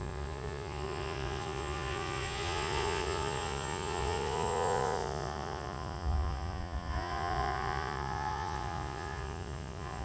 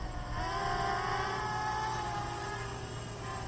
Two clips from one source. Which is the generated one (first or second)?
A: first